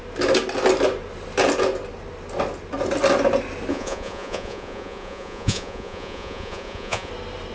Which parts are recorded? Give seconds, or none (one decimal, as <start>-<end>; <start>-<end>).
0.0-3.7; 7.1-7.5